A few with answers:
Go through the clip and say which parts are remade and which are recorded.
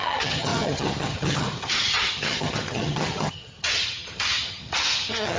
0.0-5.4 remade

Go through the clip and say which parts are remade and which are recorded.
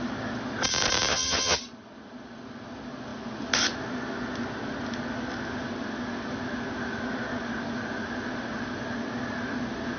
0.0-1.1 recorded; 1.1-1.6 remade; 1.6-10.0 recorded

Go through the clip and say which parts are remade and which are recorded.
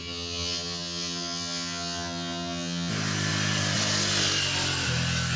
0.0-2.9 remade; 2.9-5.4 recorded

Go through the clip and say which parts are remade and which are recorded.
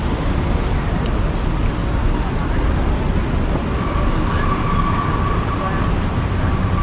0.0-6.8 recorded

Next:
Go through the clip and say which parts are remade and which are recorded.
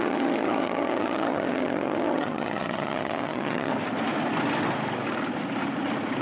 0.0-3.7 remade; 3.7-6.2 recorded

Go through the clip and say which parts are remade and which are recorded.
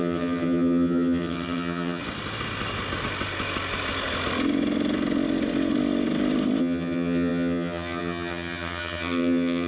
0.0-2.0 remade; 2.0-6.6 recorded; 6.6-9.7 remade